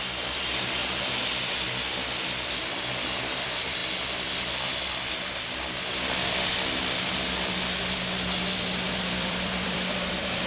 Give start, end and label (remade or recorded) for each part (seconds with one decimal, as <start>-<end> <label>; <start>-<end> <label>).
0.0-0.8 remade; 0.8-1.6 recorded; 1.6-3.8 remade; 3.8-9.0 recorded; 9.0-10.5 remade